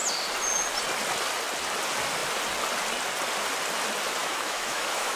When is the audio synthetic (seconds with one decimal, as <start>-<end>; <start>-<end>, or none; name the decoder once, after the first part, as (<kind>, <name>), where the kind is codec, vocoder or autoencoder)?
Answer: 4.2-5.2 (autoencoder, DAC-VAE)